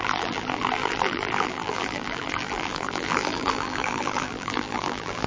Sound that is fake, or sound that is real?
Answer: fake